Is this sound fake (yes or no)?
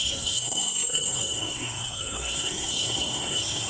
yes